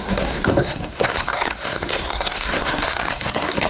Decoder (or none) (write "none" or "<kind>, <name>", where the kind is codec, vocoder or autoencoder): codec, SNAC